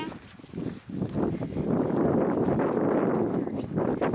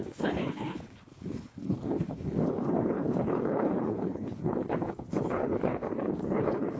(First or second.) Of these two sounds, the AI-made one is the second